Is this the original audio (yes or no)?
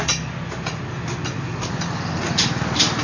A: yes